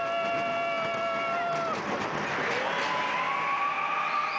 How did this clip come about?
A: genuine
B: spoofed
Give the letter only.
A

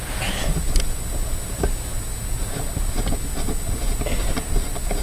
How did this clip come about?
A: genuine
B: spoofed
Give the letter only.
A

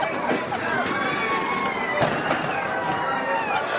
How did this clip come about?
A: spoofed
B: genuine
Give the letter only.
B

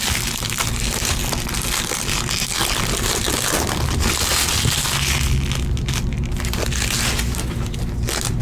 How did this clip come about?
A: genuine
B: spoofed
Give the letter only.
A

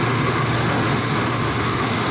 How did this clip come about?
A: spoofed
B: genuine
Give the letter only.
A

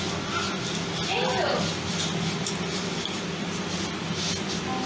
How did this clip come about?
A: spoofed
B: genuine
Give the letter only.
B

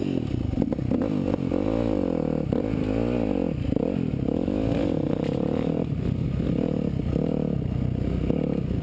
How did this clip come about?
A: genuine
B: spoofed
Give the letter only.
A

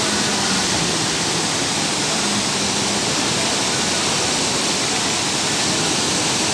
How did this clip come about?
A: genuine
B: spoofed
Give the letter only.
A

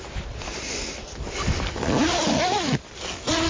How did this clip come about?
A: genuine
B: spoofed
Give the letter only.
A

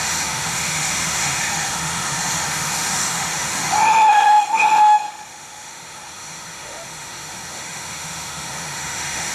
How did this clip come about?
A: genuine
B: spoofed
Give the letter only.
B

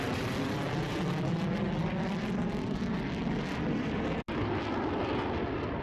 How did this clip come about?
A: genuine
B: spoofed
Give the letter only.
A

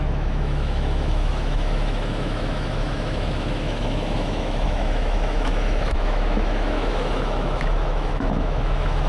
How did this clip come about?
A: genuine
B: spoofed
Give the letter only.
B